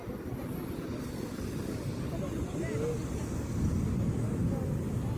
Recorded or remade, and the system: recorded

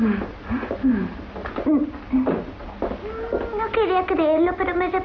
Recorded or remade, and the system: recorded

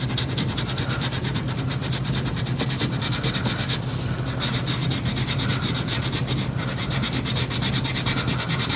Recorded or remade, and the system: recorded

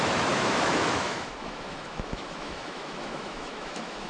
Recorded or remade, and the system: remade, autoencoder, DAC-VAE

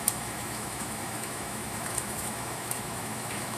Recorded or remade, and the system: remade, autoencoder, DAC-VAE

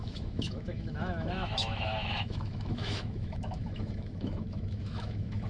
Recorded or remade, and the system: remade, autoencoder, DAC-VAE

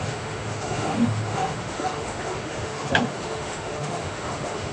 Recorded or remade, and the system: remade, autoencoder, DAC-VAE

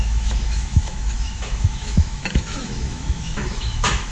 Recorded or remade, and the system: remade, autoencoder, DAC-VAE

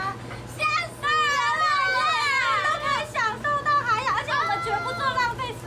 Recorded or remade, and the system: recorded